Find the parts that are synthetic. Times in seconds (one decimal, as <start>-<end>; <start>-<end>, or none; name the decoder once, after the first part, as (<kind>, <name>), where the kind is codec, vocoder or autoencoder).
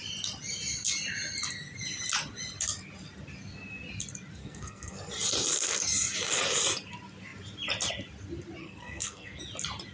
4.4-5.1 (codec, SNAC); 8.6-9.4